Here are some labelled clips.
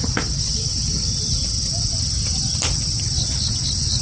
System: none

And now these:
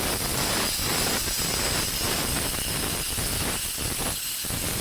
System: none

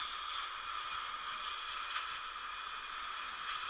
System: none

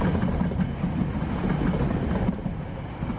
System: none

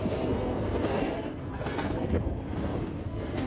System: codec, SNAC